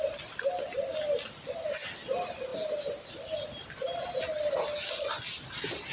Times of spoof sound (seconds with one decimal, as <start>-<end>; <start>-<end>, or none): none